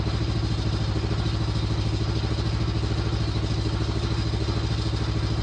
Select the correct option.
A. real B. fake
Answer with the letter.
A